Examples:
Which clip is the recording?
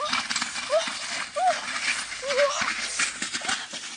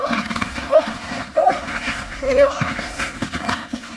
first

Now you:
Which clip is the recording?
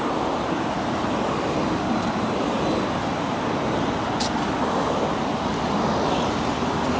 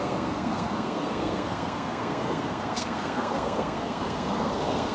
first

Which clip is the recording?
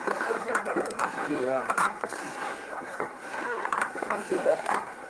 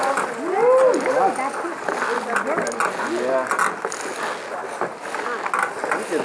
second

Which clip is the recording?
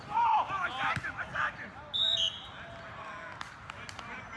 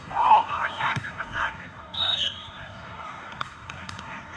first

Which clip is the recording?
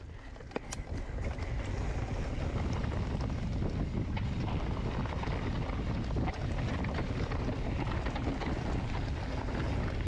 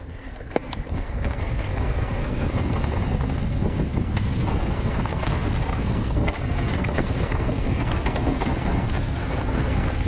first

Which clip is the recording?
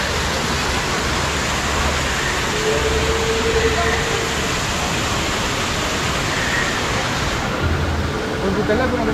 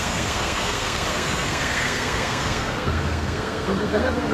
first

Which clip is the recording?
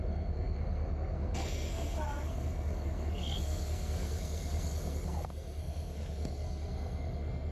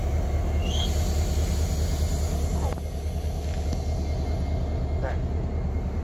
second